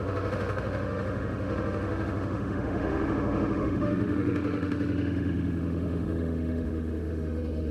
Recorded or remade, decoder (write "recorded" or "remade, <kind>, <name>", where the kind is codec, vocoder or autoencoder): remade, autoencoder, DAC-VAE